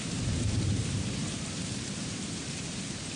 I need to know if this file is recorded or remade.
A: remade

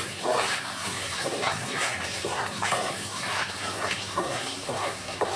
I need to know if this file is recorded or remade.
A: remade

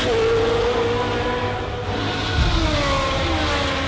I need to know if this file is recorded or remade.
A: recorded